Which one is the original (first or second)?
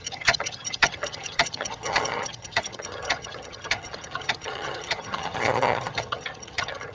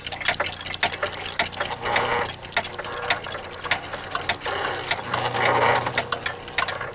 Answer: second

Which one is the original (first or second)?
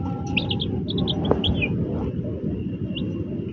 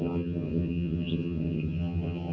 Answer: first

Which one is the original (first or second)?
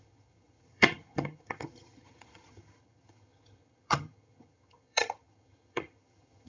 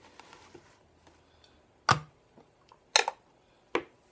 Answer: second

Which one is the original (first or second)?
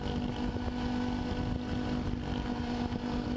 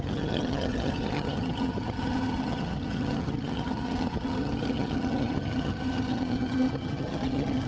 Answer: first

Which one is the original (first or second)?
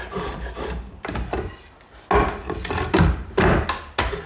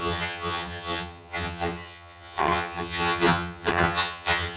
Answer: first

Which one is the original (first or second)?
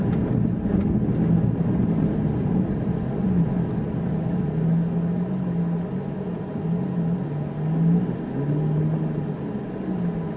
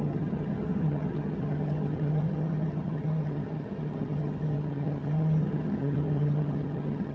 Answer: first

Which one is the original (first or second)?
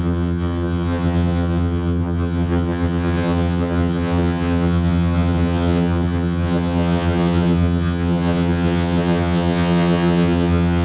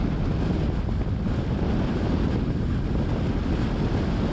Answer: second